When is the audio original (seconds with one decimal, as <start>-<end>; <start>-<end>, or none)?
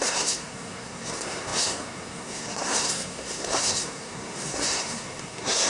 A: none